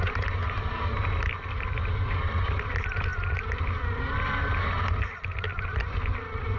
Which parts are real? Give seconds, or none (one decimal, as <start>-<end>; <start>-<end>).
0.0-6.6